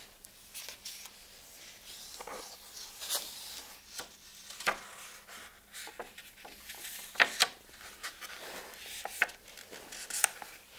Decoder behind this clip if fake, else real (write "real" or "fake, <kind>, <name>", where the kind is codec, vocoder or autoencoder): real